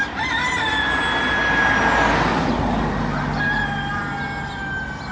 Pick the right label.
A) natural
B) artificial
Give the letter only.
A